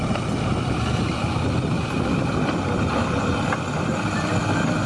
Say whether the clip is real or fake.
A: real